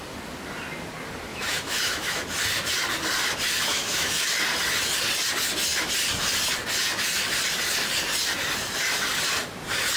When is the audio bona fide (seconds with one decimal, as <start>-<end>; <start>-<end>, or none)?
0.0-1.3; 2.2-3.7; 4.3-10.0